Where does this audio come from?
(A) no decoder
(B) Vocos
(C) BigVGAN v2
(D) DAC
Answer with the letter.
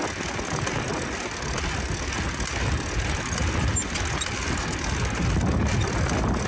A